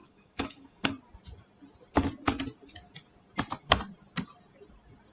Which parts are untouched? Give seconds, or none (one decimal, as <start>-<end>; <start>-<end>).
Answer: 0.9-5.1

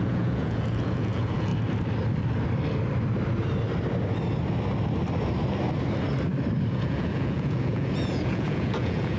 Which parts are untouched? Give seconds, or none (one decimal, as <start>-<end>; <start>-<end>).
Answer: 1.5-6.7

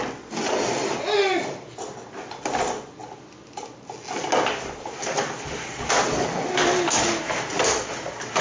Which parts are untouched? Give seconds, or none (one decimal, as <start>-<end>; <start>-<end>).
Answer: 0.0-8.4

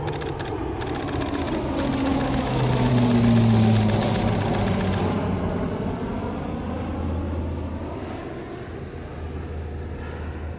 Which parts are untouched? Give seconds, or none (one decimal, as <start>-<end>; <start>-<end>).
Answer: 0.0-2.1; 2.9-10.6

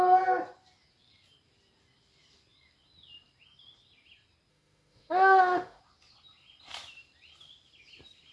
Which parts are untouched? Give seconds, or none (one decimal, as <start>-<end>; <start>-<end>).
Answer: 0.0-4.5; 5.8-8.3

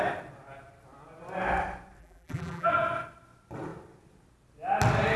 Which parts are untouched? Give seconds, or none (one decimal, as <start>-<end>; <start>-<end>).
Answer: 0.0-2.0; 2.7-5.2

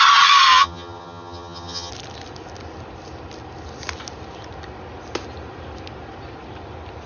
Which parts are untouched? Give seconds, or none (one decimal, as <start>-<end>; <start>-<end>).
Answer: 0.0-0.5; 1.9-7.1